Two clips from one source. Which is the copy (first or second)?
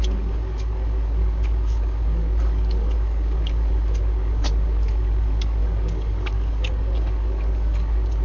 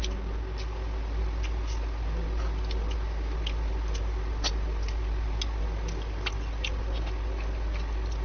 first